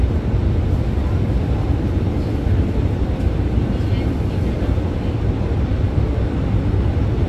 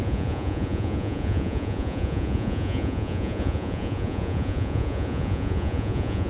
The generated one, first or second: second